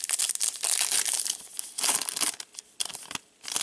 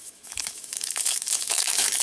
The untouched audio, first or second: first